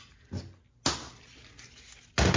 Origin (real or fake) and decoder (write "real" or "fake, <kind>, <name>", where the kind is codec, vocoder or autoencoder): real